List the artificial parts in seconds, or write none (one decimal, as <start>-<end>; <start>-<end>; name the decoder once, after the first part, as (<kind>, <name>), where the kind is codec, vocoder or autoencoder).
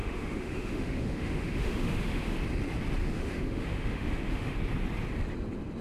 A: 0.0-2.4 (autoencoder, DAC-VAE); 3.0-4.6